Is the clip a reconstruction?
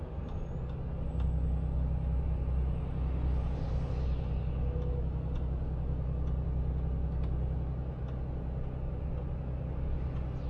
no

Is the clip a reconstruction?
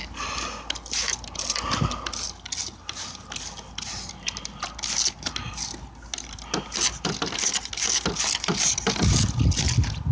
no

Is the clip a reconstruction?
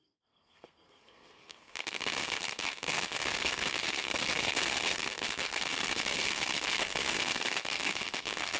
yes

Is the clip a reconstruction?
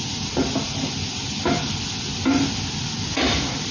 no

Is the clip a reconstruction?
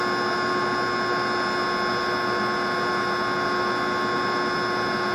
no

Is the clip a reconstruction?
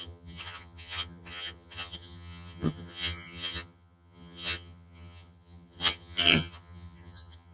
yes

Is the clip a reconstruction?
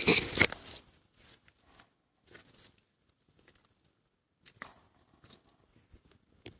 no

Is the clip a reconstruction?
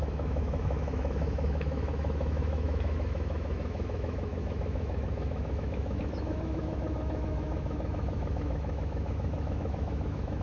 yes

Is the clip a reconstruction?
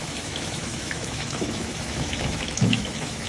yes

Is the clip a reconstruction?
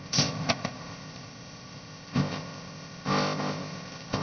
yes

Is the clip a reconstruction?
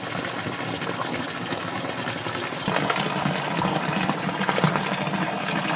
no